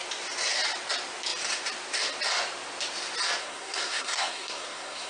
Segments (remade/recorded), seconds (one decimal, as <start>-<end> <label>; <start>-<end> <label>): 0.0-3.4 recorded; 3.4-5.1 remade